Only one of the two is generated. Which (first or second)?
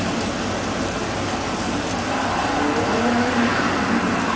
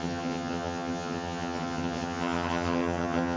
second